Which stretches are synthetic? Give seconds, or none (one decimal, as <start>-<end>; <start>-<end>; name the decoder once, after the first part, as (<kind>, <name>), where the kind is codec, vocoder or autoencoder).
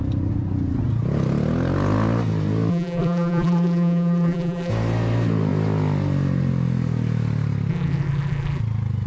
2.7-4.7 (vocoder, BigVGAN v2); 7.7-8.6